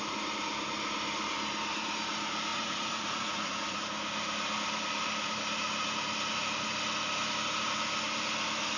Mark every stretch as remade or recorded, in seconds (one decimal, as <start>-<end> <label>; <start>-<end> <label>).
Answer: 0.0-2.5 recorded; 2.5-3.8 remade; 3.8-8.8 recorded